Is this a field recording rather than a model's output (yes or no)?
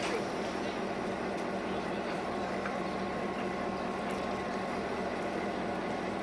no